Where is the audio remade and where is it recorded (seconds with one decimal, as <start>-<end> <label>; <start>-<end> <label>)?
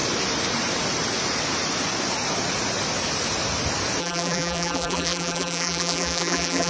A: 0.0-4.0 recorded; 4.0-6.7 remade